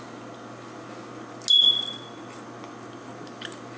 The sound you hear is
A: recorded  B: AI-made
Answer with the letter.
A